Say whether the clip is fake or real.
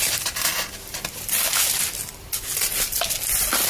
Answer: real